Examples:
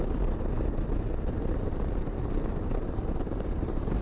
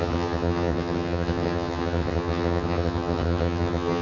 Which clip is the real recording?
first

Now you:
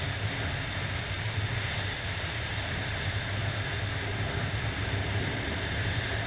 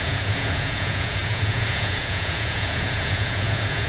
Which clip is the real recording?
first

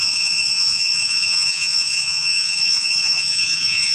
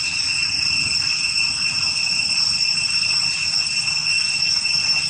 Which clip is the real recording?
second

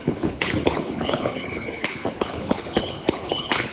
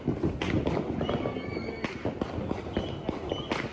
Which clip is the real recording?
second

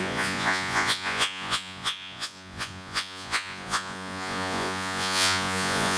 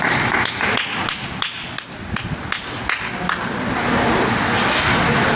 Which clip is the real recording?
second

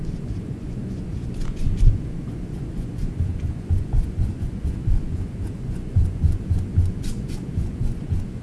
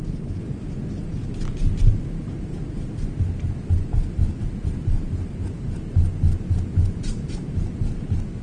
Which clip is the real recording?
second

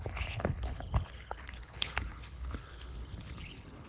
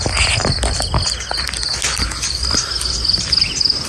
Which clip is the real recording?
second